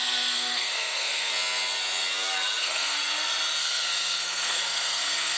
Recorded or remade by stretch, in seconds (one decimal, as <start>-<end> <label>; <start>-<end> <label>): 0.0-1.3 remade; 1.3-2.6 recorded; 2.6-3.0 remade; 3.0-3.6 recorded; 3.6-5.4 remade